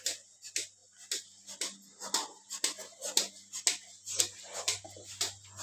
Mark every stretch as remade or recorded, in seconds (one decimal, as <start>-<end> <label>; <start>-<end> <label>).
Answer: 0.0-5.6 recorded